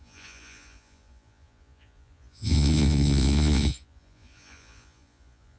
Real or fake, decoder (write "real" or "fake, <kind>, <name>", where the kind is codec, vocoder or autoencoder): fake, vocoder, Vocos